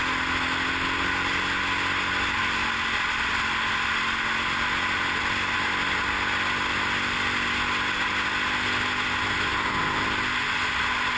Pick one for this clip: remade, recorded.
recorded